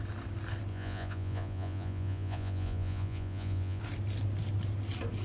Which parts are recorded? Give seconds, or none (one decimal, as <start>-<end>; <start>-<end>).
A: 0.0-0.7; 3.8-5.2